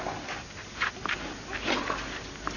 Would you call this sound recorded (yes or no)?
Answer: yes